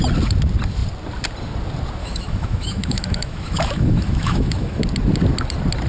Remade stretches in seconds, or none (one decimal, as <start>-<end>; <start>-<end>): 2.0-4.8